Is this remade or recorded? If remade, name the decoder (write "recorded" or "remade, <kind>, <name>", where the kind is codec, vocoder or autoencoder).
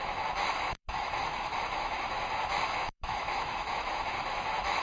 remade, autoencoder, DAC-VAE